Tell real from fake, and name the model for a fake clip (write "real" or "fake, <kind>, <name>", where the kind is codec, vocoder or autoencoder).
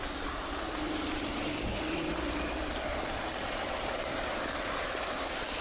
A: fake, vocoder, BigVGAN v2